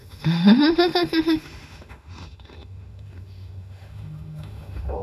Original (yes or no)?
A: no